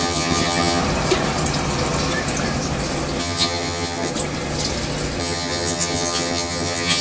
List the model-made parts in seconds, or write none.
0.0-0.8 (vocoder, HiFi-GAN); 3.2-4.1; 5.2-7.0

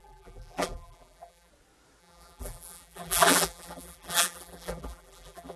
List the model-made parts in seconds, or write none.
0.0-1.5 (vocoder, BigVGAN v2); 2.0-5.6

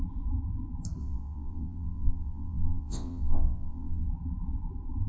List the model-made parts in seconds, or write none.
1.0-4.1 (vocoder, WaveNeXt)

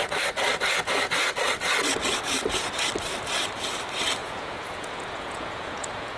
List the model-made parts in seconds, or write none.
4.2-6.2 (vocoder, Vocos)

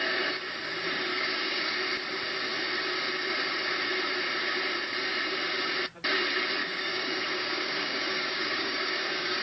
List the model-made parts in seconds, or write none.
1.1-1.7 (codec, DAC); 6.6-9.4

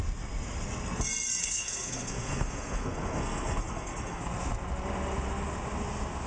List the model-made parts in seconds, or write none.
1.4-4.2 (codec, SNAC)